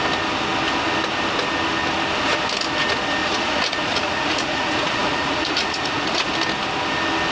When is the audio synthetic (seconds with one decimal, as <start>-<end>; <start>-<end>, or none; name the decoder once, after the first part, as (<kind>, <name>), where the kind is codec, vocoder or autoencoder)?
3.2-6.3 (vocoder, Vocos)